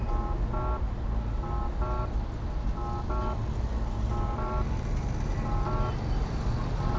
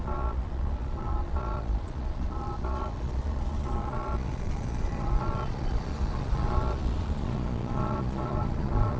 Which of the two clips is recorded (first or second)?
first